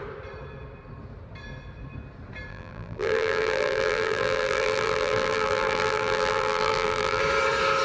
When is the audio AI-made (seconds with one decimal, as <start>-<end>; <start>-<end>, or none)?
2.5-7.2